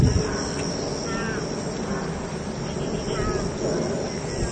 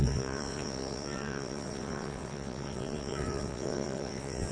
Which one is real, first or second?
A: first